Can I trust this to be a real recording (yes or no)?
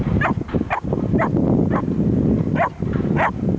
yes